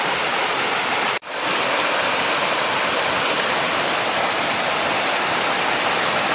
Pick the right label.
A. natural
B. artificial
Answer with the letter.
A